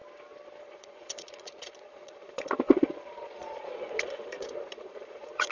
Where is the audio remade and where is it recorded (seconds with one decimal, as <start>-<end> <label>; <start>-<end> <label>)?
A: 0.0-0.6 recorded; 0.6-5.5 remade